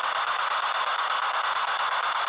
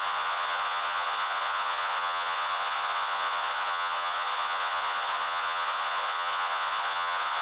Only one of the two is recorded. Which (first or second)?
first